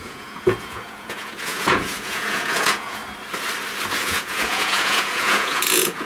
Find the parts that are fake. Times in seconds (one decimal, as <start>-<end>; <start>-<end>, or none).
0.0-3.0; 4.0-6.1